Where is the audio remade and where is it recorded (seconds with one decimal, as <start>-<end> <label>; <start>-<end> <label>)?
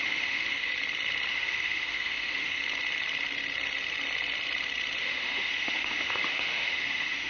0.0-0.7 remade; 0.7-1.3 recorded; 1.3-2.6 remade; 2.6-5.0 recorded; 5.0-7.3 remade